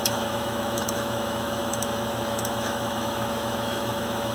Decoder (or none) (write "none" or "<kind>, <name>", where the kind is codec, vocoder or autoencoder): autoencoder, DAC-VAE